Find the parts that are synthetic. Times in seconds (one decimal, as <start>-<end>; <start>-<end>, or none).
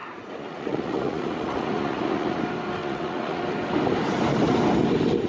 0.0-2.4; 2.8-3.4